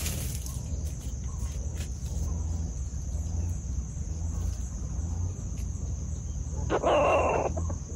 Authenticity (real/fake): real